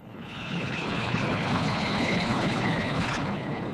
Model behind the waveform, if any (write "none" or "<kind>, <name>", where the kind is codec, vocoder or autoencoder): codec, HILCodec